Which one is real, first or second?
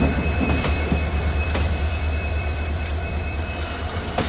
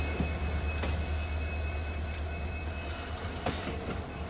second